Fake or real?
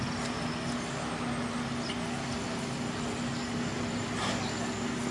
real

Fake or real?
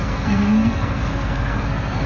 fake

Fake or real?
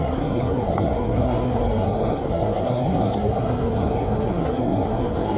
fake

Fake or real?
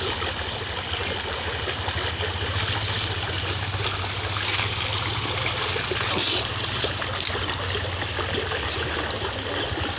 real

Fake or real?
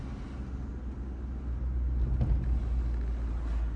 real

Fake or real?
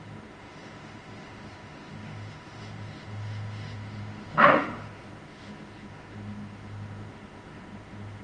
fake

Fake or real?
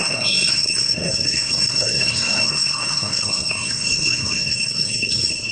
fake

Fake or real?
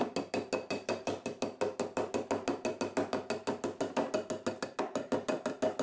real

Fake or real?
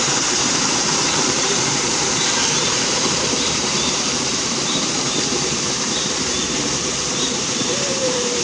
fake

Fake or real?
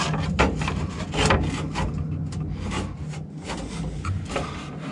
real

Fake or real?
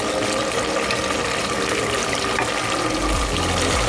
real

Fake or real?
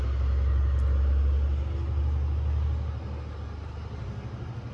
real